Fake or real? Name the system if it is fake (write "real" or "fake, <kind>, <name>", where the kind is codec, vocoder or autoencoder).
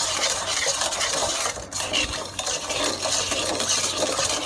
real